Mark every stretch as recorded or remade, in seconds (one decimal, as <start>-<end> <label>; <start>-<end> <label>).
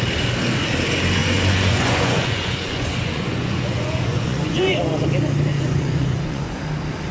0.0-1.2 recorded; 1.2-4.8 remade; 4.8-5.5 recorded; 5.5-6.6 remade; 6.6-7.1 recorded